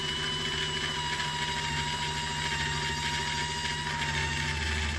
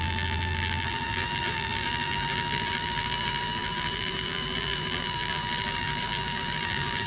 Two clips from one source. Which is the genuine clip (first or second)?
first